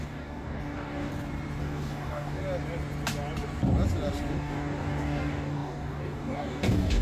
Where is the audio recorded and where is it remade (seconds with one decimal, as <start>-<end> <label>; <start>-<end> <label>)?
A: 0.0-1.1 remade; 1.1-1.6 recorded; 1.6-2.4 remade; 2.4-4.3 recorded; 4.3-7.0 remade